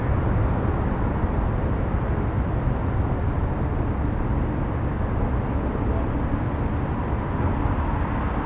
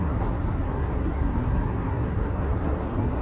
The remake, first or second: second